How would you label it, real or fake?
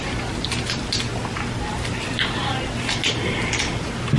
real